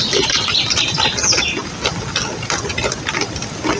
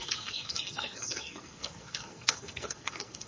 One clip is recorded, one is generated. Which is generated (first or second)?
second